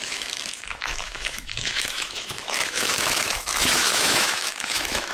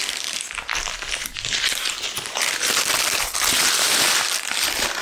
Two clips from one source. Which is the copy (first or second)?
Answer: first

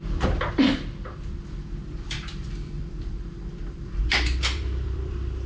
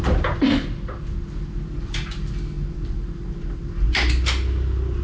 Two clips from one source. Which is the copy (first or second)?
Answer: first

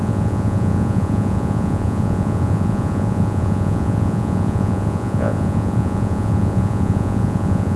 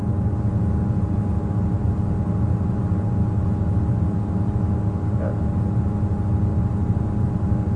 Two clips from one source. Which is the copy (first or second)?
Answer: first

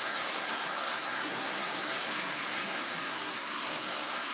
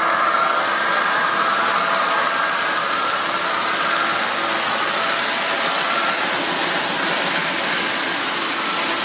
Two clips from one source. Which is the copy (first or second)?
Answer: first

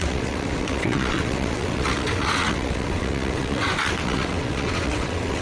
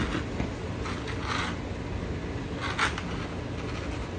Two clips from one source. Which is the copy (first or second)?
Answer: first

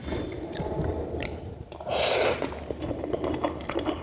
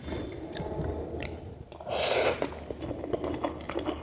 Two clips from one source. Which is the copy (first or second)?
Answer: first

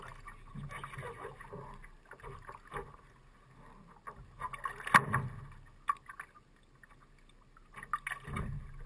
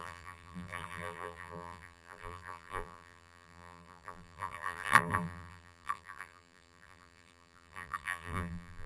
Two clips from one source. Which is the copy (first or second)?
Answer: second